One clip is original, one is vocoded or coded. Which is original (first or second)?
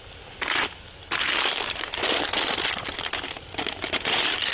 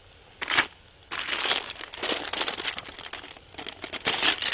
second